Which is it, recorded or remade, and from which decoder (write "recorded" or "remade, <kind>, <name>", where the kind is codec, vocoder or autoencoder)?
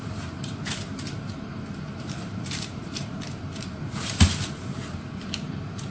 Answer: remade, vocoder, BigVGAN v2